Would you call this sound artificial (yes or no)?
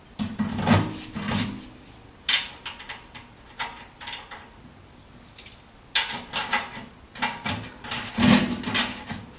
no